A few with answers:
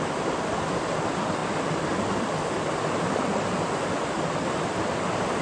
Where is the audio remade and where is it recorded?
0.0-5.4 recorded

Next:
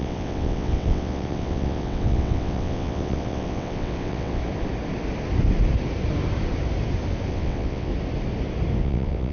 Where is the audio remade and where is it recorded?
0.0-4.4 remade; 4.4-7.3 recorded; 7.3-7.9 remade; 7.9-8.8 recorded; 8.8-9.3 remade